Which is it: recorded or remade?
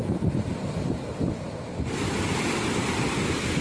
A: recorded